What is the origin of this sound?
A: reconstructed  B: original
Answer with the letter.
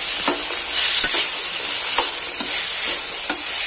B